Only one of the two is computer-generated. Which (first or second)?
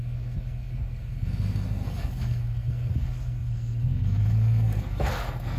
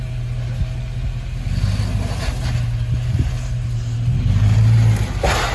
first